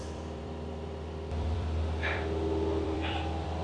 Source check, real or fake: fake